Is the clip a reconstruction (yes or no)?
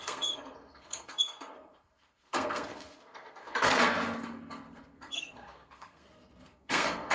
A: yes